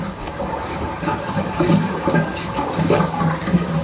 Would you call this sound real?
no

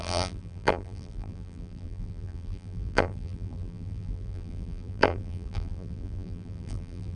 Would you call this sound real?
no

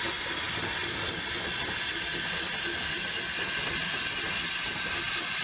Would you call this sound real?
yes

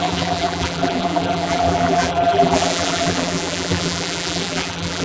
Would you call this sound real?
no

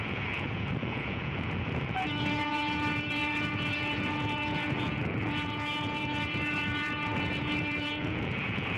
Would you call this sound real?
no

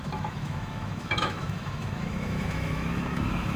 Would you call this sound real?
no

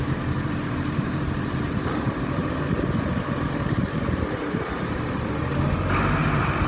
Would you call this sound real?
no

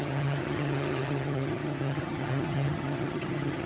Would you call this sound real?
no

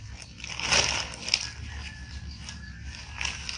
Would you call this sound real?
yes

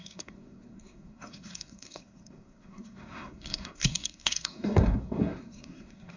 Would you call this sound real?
no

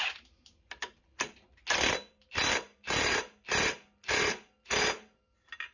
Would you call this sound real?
yes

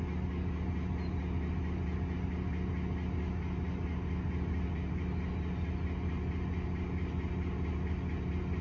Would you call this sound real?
yes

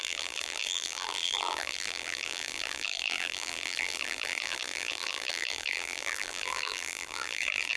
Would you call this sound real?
no